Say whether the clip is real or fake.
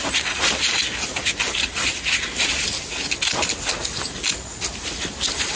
real